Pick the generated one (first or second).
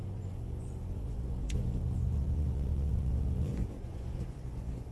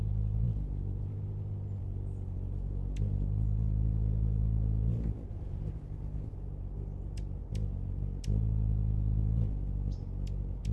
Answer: first